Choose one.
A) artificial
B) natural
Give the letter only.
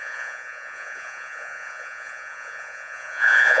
A